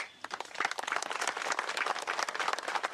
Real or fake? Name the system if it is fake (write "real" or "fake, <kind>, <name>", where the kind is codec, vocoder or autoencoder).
real